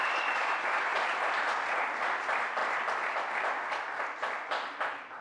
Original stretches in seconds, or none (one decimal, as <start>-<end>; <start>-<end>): 0.0-5.2